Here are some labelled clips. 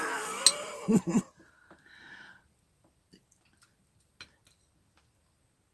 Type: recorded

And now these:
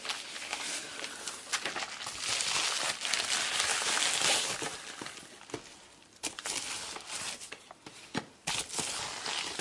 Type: recorded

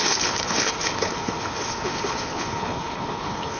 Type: remade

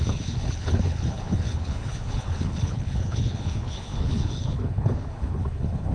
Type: remade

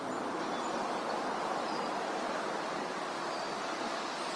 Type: recorded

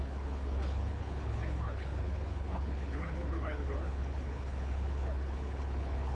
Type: remade